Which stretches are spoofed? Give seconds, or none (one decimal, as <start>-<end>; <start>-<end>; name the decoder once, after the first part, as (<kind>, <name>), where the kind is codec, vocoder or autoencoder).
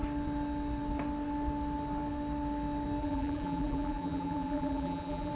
3.0-5.3 (vocoder, BigVGAN v2)